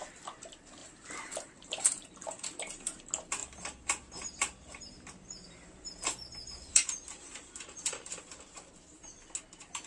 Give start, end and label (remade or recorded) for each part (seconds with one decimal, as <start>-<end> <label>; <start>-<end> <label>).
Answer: 0.0-0.8 recorded; 0.8-3.0 remade; 3.0-3.4 recorded; 3.4-8.2 remade; 8.2-9.9 recorded